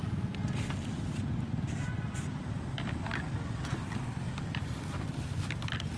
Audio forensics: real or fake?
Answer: real